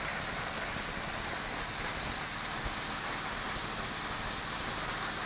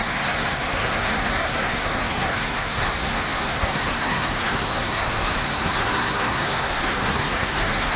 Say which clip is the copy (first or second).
second